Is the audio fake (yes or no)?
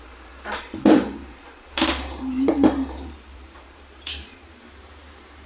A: yes